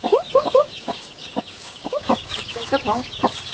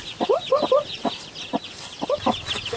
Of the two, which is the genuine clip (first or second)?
second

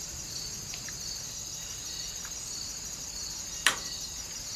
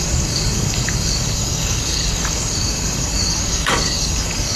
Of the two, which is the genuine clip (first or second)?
first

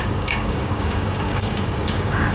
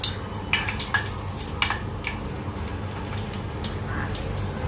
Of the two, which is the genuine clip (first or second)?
second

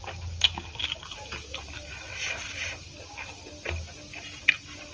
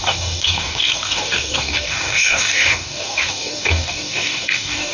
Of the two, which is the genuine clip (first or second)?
first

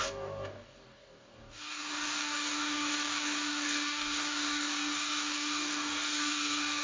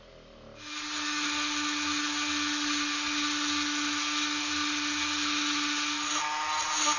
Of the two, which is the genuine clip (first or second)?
second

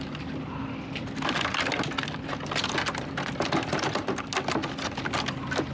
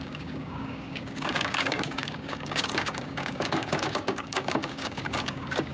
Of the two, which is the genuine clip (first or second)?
first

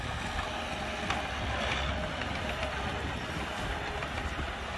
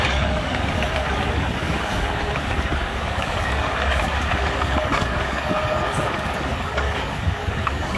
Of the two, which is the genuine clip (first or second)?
first